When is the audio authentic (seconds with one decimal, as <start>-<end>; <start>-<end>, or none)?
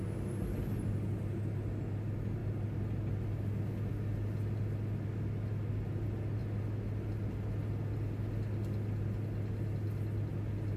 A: 0.0-10.8